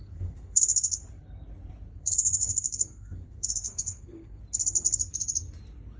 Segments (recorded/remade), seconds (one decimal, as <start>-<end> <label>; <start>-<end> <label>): 0.0-1.0 remade; 1.0-1.9 recorded; 1.9-4.4 remade; 4.4-6.0 recorded